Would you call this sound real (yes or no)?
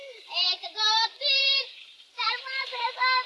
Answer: no